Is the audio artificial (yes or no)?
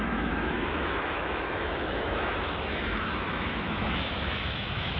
yes